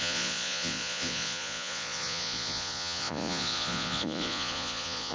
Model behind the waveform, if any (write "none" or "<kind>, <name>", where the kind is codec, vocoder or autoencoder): vocoder, Vocos